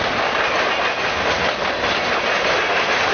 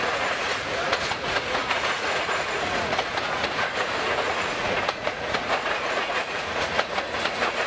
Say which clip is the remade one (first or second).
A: second